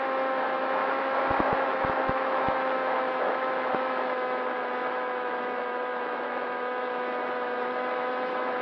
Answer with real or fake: fake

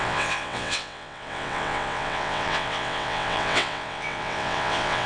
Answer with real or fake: fake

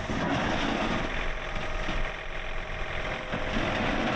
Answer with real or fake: real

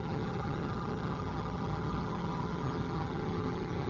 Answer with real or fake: fake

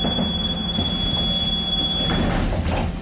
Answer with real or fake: real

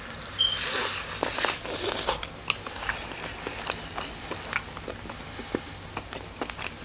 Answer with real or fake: real